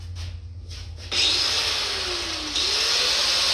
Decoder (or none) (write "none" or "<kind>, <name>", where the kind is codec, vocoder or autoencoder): none